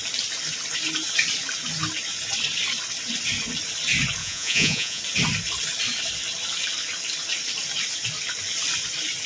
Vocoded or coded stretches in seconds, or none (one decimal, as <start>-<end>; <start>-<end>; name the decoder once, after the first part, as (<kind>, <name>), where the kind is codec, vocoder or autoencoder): 4.2-5.0 (vocoder, Vocos)